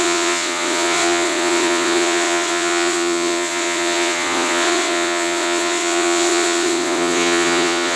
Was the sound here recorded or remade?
remade